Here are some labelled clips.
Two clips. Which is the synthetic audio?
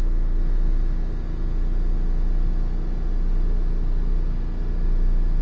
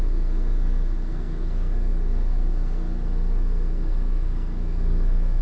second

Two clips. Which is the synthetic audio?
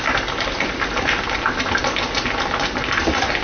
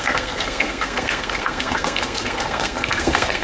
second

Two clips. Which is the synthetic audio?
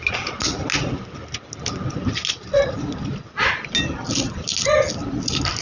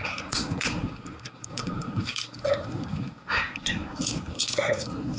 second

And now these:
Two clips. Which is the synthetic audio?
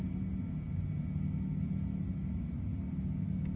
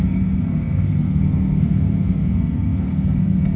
second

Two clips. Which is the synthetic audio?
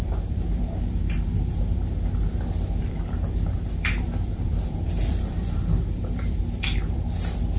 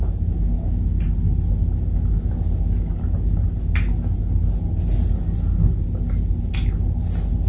first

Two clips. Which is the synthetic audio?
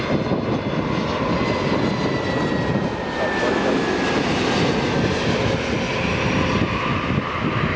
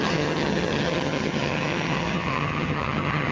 second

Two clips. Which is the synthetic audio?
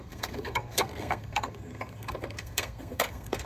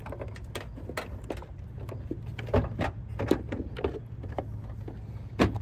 first